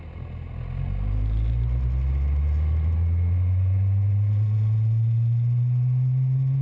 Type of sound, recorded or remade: recorded